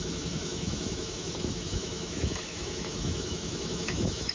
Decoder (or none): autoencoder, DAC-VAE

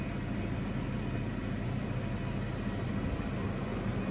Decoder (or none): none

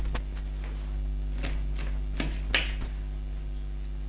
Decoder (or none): none